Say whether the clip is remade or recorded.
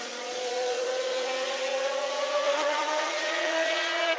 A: remade